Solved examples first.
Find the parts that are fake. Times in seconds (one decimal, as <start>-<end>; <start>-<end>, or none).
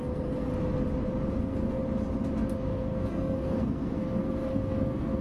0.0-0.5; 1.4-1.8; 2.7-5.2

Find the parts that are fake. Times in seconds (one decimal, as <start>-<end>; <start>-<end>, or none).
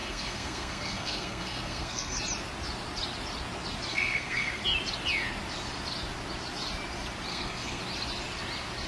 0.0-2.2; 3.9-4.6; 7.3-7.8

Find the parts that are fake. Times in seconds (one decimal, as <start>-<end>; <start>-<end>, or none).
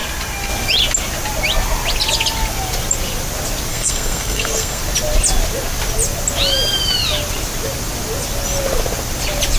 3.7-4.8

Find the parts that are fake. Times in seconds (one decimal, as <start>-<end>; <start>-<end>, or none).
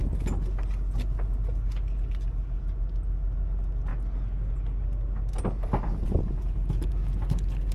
none